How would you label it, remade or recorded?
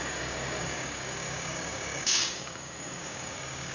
remade